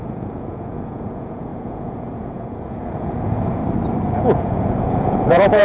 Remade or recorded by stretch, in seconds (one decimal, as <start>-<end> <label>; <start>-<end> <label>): 0.0-3.6 remade; 3.6-4.1 recorded; 4.1-5.6 remade